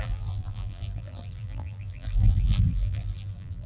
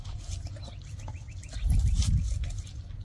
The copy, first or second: first